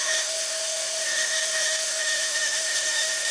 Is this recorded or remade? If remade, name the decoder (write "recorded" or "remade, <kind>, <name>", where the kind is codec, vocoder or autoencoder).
remade, autoencoder, DAC-VAE